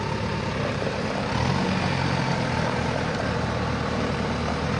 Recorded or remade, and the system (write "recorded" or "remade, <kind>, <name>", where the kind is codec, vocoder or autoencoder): recorded